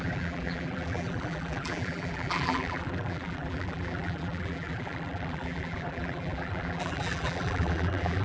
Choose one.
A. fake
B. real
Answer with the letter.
A